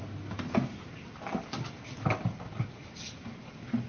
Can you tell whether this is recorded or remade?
recorded